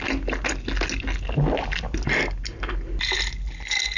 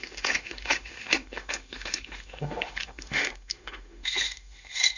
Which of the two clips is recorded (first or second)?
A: first